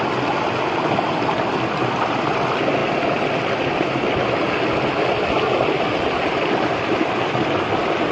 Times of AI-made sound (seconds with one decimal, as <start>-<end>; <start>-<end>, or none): none